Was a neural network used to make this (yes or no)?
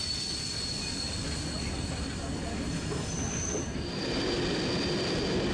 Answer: no